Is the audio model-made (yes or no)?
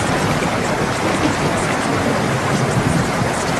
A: no